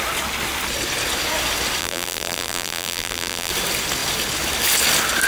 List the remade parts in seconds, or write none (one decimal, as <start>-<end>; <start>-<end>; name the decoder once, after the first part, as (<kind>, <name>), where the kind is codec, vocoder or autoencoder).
1.8-3.5 (vocoder, BigVGAN v2)